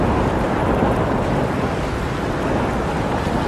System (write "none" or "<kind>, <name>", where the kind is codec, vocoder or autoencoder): none